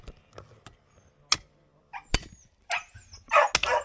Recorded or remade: recorded